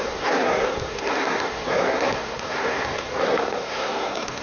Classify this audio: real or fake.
fake